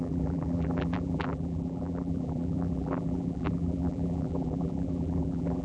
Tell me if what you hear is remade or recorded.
remade